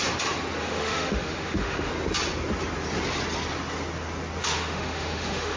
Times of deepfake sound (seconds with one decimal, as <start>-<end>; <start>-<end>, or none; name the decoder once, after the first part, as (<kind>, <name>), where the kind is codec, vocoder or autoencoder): 0.6-1.9 (autoencoder, DAC-VAE); 4.4-5.6